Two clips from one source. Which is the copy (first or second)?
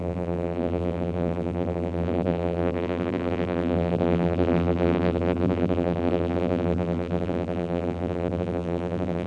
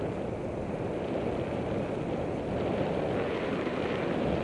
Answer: first